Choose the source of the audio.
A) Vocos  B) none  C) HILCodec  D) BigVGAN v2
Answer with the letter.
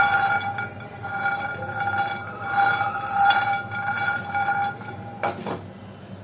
B